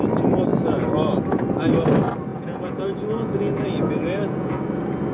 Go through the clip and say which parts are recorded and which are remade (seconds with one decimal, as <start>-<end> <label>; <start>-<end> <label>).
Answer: 0.0-2.3 recorded; 2.3-4.6 remade; 4.6-5.1 recorded